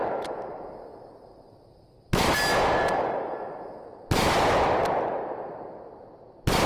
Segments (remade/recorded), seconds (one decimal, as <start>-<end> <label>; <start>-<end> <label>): 0.0-6.7 recorded